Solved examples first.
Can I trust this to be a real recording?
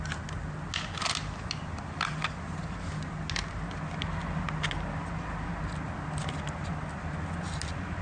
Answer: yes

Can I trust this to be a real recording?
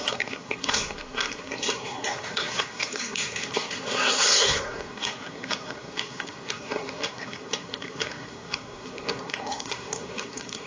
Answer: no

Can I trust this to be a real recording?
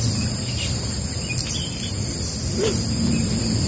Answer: yes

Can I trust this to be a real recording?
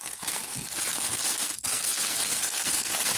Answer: no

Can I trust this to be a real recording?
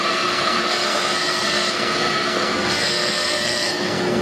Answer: no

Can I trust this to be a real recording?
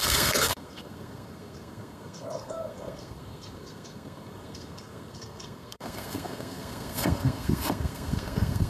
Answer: no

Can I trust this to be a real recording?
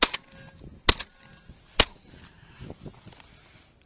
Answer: yes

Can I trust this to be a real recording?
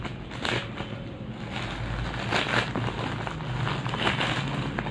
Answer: yes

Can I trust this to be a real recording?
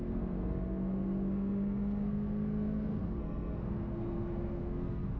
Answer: no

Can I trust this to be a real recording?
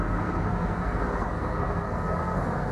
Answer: no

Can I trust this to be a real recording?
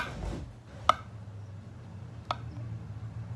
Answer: yes